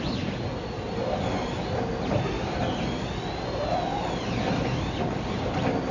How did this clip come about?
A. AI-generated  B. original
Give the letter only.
B